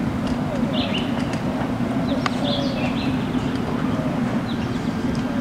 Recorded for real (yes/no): yes